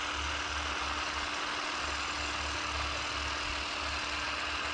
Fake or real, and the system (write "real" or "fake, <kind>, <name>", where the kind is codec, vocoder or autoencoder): real